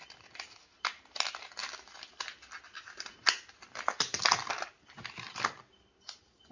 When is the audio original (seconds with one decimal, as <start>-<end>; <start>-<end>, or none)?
0.0-6.5